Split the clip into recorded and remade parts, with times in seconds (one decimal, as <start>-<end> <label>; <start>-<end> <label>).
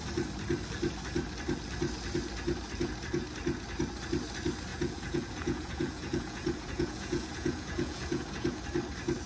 0.0-4.7 recorded; 4.7-8.6 remade; 8.6-9.3 recorded